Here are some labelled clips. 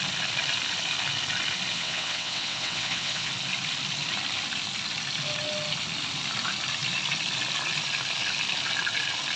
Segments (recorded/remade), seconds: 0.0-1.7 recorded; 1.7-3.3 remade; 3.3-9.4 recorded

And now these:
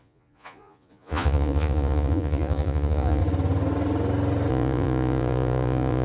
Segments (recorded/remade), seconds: 0.0-3.2 remade; 3.2-4.5 recorded; 4.5-6.0 remade